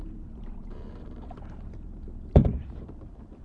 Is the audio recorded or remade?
remade